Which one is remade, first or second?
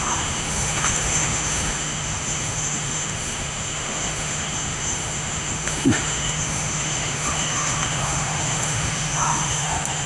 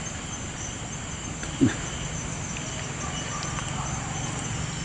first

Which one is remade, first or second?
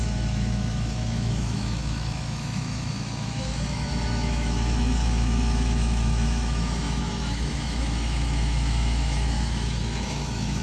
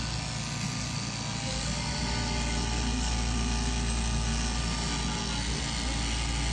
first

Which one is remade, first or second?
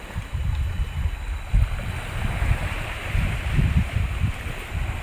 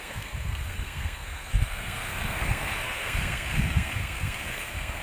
second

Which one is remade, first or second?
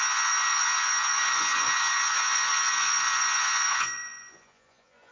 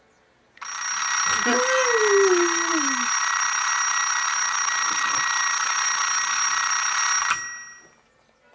first